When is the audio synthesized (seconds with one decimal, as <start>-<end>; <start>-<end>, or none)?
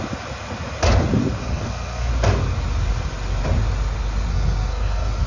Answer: 1.4-2.1; 4.3-5.3